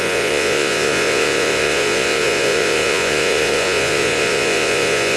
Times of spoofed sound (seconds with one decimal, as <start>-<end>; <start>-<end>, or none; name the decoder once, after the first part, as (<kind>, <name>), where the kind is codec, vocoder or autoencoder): 0.0-5.2 (vocoder, Vocos)